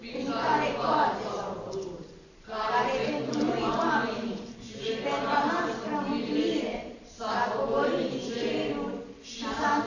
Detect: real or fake fake